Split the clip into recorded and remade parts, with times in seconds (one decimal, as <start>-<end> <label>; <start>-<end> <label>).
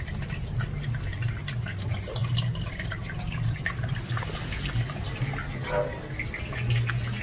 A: 0.0-7.2 recorded